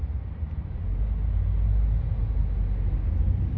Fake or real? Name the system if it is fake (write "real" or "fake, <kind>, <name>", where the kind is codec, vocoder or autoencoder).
real